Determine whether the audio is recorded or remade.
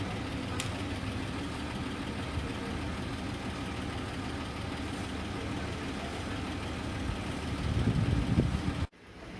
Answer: recorded